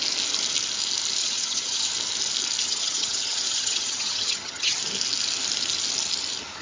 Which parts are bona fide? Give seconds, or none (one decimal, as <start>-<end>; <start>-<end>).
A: 0.0-1.2; 1.9-2.6; 4.8-6.6